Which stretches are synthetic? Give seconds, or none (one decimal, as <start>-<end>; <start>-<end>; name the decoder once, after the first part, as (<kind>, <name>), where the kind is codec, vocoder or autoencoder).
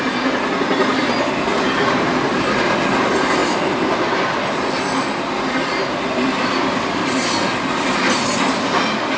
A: none